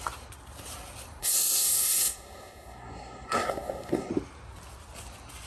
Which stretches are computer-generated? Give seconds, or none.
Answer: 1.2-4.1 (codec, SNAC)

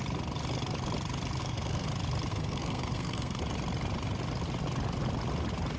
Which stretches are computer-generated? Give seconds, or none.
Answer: 1.4-1.9 (codec, SNAC); 2.3-3.4